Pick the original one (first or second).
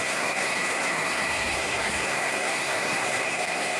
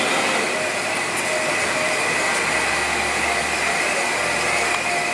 second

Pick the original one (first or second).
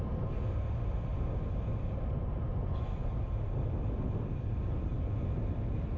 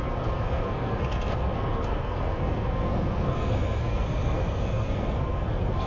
first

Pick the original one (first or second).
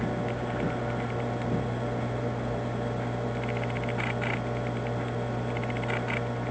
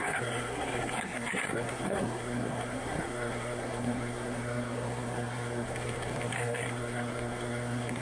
first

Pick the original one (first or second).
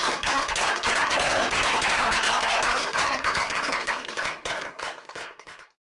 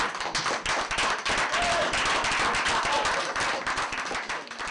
second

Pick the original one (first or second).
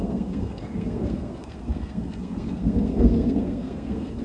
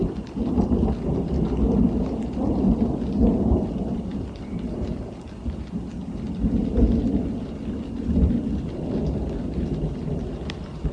second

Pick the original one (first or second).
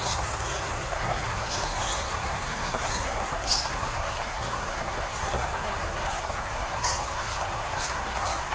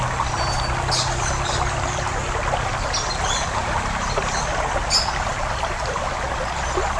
second